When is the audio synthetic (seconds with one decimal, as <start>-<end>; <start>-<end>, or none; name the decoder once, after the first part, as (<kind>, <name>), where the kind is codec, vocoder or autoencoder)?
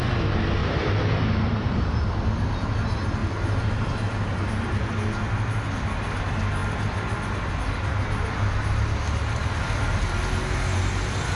0.6-2.1 (vocoder, BigVGAN v2); 3.2-4.9